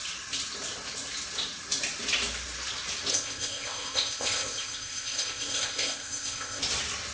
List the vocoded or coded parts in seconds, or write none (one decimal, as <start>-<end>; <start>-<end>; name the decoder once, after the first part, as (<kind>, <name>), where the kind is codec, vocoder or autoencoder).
3.1-6.6 (codec, ZipCodec)